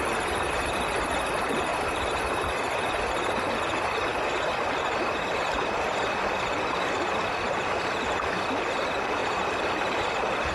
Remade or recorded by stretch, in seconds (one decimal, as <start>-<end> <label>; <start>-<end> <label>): 0.0-10.5 recorded